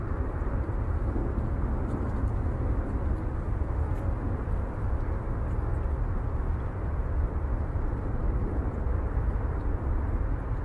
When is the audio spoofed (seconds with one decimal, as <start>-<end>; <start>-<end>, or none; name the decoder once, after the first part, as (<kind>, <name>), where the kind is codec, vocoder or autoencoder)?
0.0-1.2 (vocoder, BigVGAN v2); 6.4-10.6